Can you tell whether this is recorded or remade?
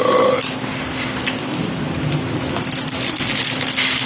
recorded